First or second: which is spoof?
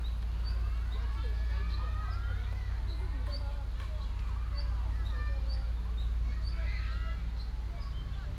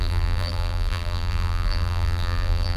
second